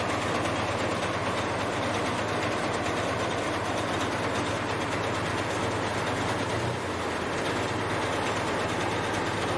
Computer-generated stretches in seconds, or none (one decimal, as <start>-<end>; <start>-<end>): none